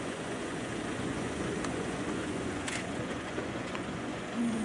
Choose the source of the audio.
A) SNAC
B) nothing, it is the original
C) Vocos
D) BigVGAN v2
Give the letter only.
C